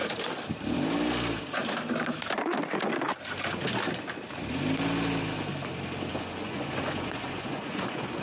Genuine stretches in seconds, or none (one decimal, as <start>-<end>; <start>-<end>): 0.0-6.1